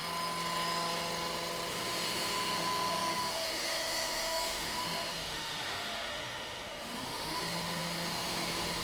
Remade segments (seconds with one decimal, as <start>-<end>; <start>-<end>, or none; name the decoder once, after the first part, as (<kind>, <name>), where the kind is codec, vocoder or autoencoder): 1.7-8.8 (autoencoder, DAC-VAE)